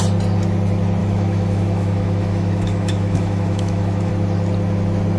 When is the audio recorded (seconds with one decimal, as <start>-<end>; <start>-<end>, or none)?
0.0-1.0; 4.1-5.2